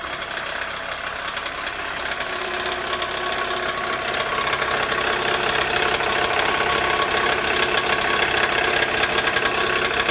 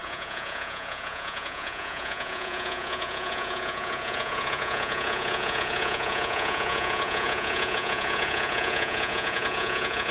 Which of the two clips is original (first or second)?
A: first